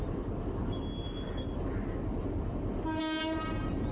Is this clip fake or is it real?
real